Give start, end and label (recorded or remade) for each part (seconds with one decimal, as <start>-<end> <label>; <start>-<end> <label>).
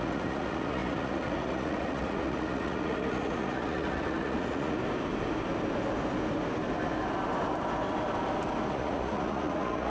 0.0-4.8 remade; 4.8-8.7 recorded; 8.7-9.9 remade